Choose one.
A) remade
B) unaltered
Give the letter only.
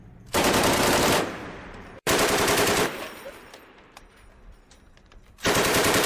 A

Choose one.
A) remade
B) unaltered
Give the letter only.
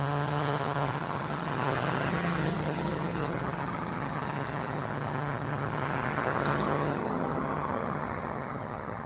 A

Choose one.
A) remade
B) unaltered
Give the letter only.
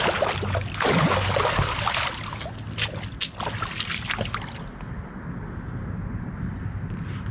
B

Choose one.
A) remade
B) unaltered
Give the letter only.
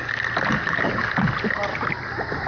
B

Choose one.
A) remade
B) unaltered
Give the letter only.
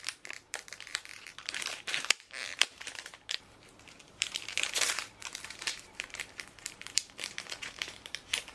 A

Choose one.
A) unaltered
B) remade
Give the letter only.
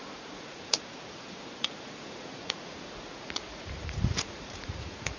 B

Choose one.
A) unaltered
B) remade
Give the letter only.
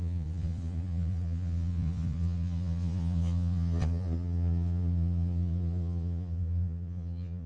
B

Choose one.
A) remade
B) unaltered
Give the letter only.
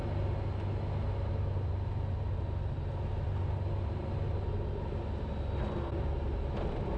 B